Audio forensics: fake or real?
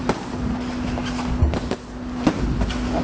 real